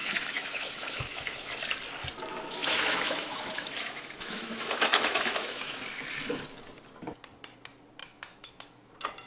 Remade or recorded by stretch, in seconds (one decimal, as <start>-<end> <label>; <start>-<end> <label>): 0.0-1.5 remade; 1.5-2.3 recorded; 2.3-5.8 remade; 5.8-8.0 recorded; 8.0-8.9 remade; 8.9-9.3 recorded